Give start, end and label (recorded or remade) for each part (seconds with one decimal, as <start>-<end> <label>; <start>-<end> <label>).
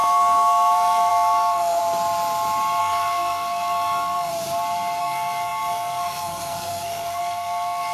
0.0-1.8 remade; 1.8-2.8 recorded; 2.8-4.3 remade; 4.3-5.0 recorded; 5.0-7.9 remade